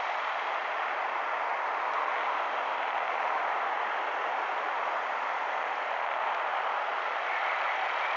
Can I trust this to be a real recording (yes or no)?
yes